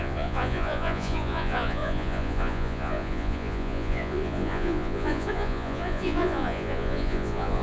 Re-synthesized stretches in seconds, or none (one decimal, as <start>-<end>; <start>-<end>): 0.0-7.6